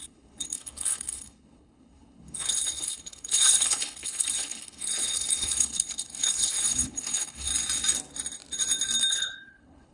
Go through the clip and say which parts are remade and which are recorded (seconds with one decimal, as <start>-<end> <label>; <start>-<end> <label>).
0.0-7.5 remade; 7.5-9.1 recorded; 9.1-9.9 remade

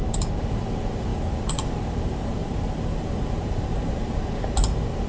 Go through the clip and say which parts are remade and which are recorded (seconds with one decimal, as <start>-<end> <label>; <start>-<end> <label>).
0.0-1.1 recorded; 1.1-4.2 remade; 4.2-5.1 recorded

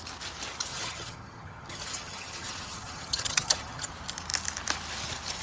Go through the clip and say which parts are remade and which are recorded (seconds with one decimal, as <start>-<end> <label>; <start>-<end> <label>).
0.0-0.7 recorded; 0.7-3.9 remade; 3.9-5.4 recorded